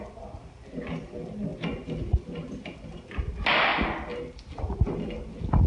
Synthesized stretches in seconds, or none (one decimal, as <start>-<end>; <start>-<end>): none